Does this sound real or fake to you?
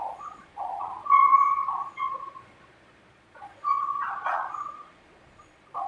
fake